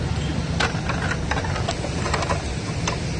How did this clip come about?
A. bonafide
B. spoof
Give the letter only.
A